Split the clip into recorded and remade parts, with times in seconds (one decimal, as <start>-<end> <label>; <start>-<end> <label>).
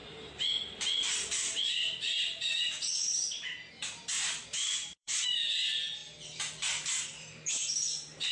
0.0-6.0 remade; 6.0-7.0 recorded; 7.0-8.3 remade